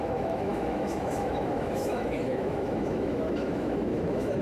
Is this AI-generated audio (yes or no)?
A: yes